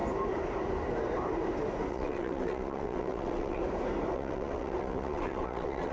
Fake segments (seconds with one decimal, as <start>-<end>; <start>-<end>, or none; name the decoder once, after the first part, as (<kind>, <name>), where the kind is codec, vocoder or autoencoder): 1.9-3.6 (vocoder, WaveNeXt); 4.1-5.9